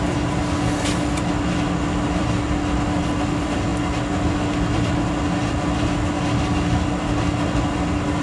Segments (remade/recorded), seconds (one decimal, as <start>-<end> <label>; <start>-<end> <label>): 0.0-8.2 recorded